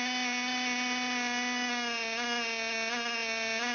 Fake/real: real